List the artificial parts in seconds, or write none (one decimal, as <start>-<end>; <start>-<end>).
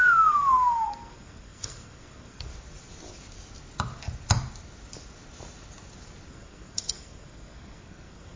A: 0.0-2.5; 6.3-8.4